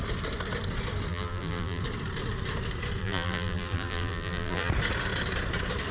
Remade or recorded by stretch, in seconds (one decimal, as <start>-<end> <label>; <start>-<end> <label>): 0.0-1.1 recorded; 1.1-1.8 remade; 1.8-3.0 recorded; 3.0-4.7 remade; 4.7-5.9 recorded